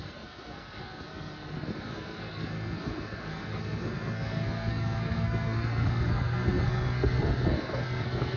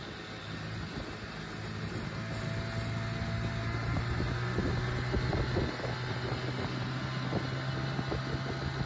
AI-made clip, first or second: first